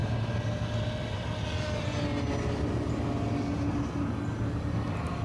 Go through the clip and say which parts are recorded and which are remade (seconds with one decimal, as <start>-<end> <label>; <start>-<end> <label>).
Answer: 0.0-5.2 recorded